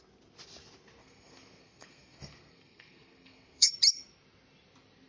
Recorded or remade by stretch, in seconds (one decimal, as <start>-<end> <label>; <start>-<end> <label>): 0.0-1.0 recorded; 1.0-3.7 remade; 3.7-5.1 recorded

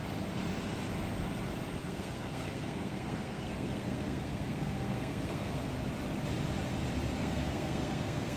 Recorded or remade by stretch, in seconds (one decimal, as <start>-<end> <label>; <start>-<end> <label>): 0.0-1.8 recorded; 1.8-5.7 remade; 5.7-7.2 recorded; 7.2-8.4 remade

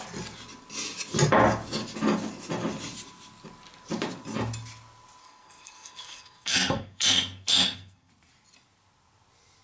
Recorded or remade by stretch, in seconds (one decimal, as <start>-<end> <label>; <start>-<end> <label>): 0.0-5.2 recorded; 5.2-8.1 remade; 8.1-9.6 recorded

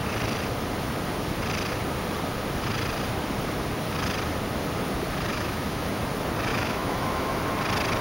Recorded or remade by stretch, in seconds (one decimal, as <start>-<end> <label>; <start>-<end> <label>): 0.0-5.3 recorded; 5.3-6.0 remade; 6.0-6.5 recorded; 6.5-7.4 remade; 7.4-8.0 recorded

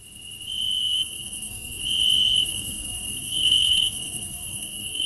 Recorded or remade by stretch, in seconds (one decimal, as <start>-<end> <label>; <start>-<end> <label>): 0.0-0.8 recorded; 0.8-1.8 remade; 1.8-2.5 recorded; 2.5-5.1 remade